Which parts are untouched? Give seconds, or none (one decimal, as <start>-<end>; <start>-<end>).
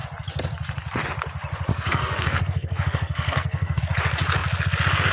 0.0-1.7; 3.8-5.1